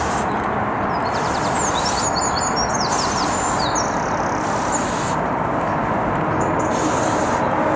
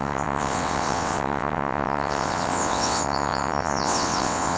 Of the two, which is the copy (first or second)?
second